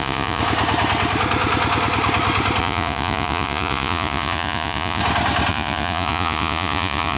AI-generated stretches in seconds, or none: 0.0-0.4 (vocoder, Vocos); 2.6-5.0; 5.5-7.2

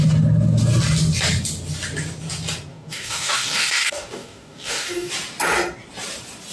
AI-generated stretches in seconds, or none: 2.7-5.1 (codec, DAC)